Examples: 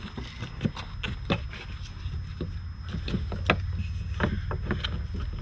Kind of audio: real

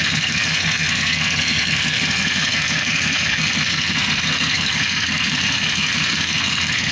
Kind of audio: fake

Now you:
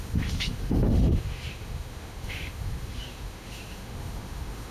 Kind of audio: fake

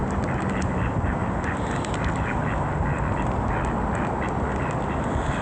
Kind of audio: real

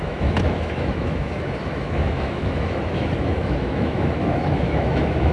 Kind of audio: fake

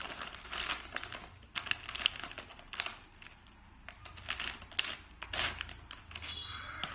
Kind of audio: real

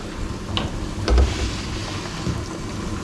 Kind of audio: real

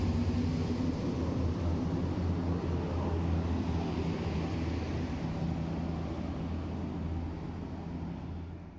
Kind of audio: real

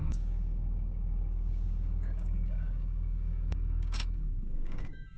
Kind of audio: fake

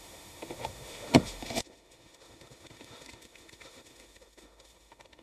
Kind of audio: fake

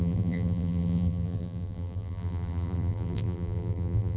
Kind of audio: fake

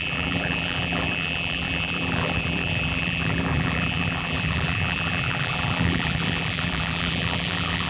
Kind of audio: fake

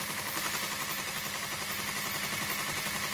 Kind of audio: real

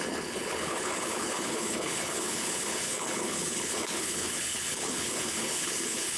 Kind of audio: fake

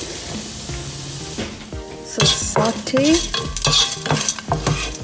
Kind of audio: real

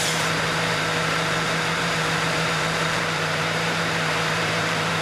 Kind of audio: fake